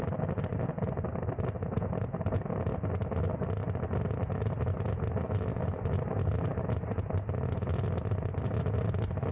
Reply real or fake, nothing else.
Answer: real